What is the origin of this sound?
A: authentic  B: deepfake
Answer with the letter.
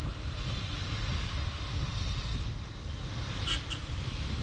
A